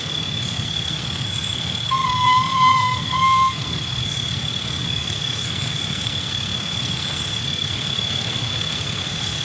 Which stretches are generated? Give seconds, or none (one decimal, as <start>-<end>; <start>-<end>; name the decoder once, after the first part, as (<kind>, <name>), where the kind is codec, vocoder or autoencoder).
0.0-9.4 (codec, SNAC)